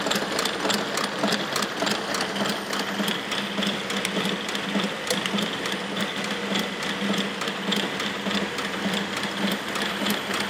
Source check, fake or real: real